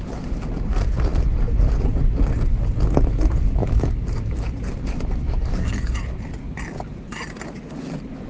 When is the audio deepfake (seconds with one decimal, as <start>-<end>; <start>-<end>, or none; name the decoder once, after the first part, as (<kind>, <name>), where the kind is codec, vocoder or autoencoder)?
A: 3.6-4.4 (codec, DAC); 5.2-5.9